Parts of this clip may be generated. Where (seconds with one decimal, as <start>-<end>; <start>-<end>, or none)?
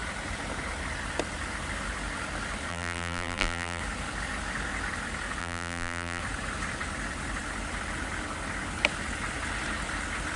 2.7-3.8; 5.4-6.2